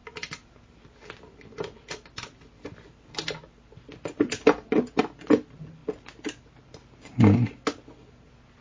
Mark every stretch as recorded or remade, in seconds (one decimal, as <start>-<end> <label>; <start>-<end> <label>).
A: 0.0-8.6 recorded